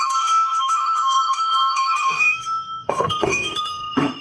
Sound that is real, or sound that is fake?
fake